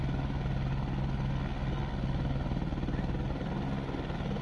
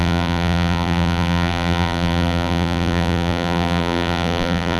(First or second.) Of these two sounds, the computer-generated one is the second